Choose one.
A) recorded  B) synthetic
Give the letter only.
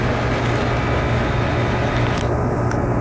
A